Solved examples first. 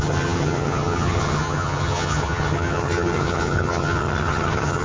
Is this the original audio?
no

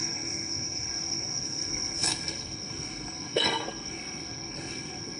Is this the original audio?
no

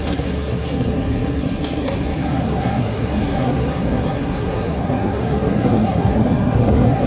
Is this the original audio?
no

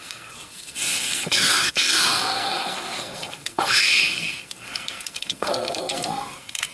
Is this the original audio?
no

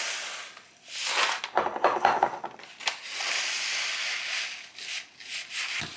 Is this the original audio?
yes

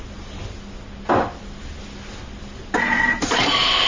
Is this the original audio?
yes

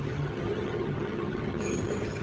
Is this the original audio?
no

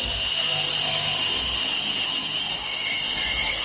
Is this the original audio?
yes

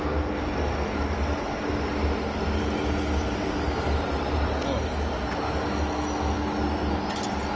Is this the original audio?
yes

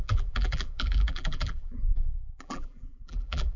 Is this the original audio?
no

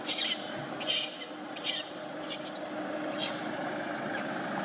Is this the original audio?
yes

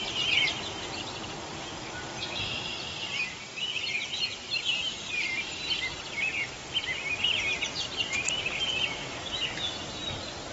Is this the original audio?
yes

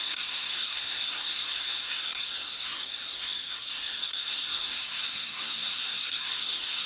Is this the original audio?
no